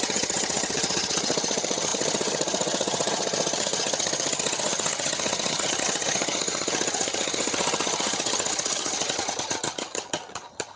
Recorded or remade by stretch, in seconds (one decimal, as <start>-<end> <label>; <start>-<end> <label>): 0.0-10.8 remade